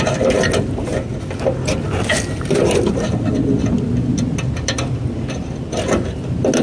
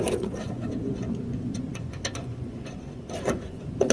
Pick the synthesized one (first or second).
second